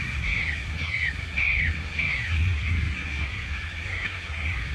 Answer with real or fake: fake